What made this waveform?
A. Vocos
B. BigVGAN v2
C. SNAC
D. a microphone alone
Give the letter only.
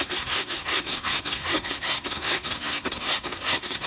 C